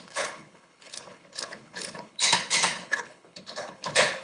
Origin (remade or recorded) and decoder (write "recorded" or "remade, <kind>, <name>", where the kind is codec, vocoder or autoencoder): remade, codec, HILCodec